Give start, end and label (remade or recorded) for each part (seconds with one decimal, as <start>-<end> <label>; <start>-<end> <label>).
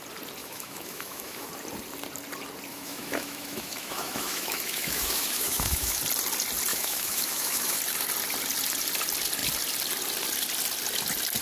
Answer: 0.0-0.4 recorded; 0.4-1.5 remade; 1.5-2.7 recorded; 2.7-6.0 remade; 6.0-6.7 recorded; 6.7-7.8 remade; 7.8-11.4 recorded